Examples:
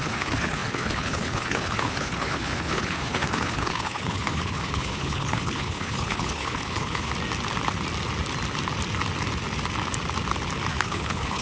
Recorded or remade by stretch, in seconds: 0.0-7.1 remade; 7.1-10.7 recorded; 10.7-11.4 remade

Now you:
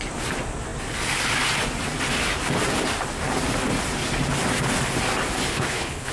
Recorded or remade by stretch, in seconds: 0.0-5.5 recorded; 5.5-6.1 remade

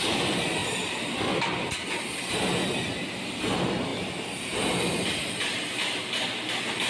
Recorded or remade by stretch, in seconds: 0.0-6.9 recorded

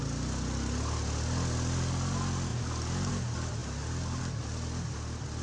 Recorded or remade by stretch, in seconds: 0.0-5.4 recorded